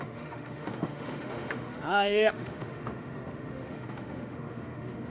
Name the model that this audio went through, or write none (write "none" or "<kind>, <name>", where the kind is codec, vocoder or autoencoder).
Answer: autoencoder, DAC-VAE